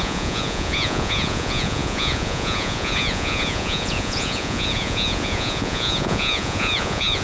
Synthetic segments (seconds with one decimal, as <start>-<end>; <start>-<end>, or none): 0.0-7.2